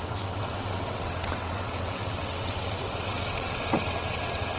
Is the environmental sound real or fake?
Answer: fake